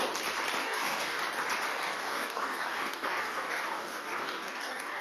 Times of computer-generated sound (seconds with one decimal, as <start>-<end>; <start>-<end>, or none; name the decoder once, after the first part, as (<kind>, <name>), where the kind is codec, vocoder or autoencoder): 0.6-1.2 (codec, DAC); 1.7-5.0